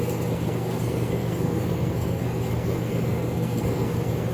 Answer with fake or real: fake